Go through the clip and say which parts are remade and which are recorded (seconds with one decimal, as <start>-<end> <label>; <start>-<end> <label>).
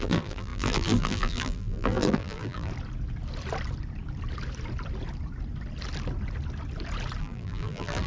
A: 0.0-2.7 remade; 2.7-7.2 recorded; 7.2-8.1 remade